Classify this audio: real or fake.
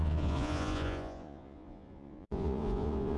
fake